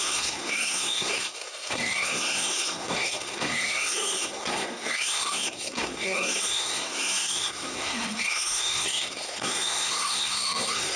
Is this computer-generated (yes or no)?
yes